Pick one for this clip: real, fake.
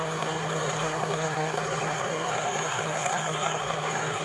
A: fake